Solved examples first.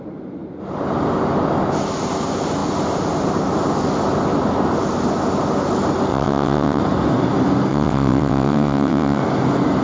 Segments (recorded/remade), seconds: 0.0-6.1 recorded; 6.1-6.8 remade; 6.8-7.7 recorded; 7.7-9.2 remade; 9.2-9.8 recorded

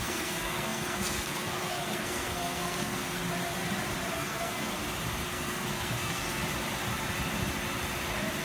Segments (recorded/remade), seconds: 0.0-3.2 remade; 3.2-4.1 recorded; 4.1-4.8 remade; 4.8-5.3 recorded; 5.3-6.4 remade; 6.4-8.4 recorded

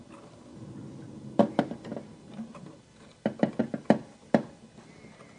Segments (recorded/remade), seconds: 0.0-5.4 recorded

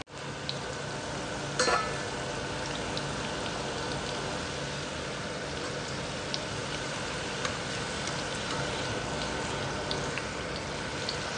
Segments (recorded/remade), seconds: 0.0-6.6 recorded; 6.6-7.5 remade; 7.5-11.4 recorded

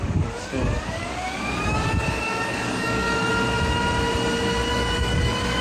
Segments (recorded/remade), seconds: 0.0-3.3 remade; 3.3-4.7 recorded; 4.7-5.6 remade